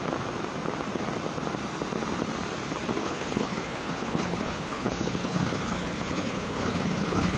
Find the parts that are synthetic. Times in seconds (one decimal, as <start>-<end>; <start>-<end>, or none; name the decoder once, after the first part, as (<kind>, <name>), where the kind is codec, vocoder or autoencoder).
3.0-7.4 (codec, HILCodec)